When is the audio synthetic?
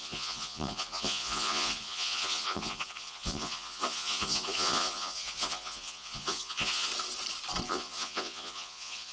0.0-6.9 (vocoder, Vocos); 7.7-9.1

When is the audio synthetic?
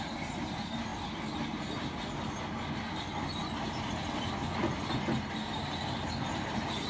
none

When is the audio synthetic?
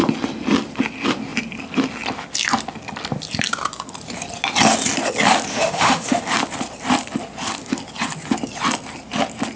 5.5-6.2 (autoencoder, DAC-VAE)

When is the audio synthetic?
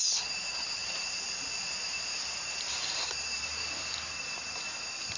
0.8-3.9 (vocoder, BigVGAN v2)